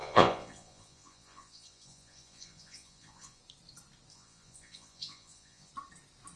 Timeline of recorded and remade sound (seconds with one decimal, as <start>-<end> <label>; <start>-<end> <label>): 0.0-3.4 remade; 3.4-4.1 recorded; 4.1-5.7 remade; 5.7-6.4 recorded